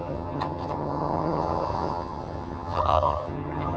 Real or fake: fake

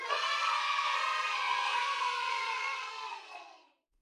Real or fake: fake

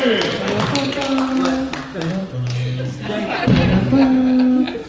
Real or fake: real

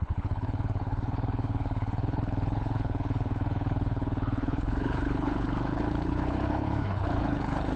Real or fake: fake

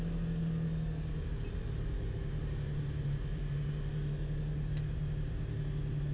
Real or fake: real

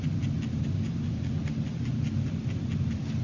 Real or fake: real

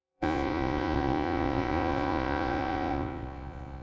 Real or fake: fake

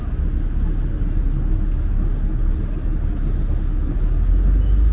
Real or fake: real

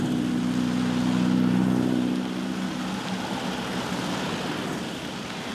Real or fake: real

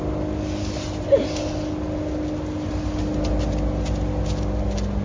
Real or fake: real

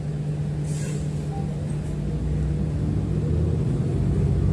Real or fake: real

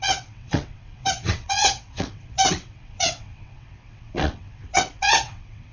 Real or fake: fake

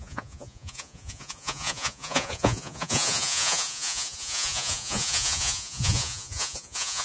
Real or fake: fake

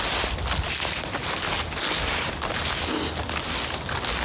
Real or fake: real